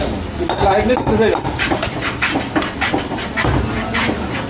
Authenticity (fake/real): real